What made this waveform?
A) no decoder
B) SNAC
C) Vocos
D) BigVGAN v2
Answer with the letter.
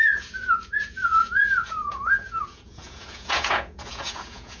C